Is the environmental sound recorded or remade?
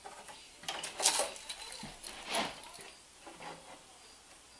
recorded